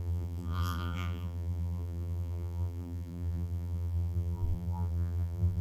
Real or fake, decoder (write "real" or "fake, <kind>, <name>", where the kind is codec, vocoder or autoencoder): fake, vocoder, BigVGAN v2